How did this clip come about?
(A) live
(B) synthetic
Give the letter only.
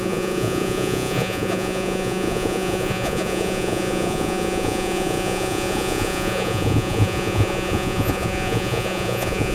B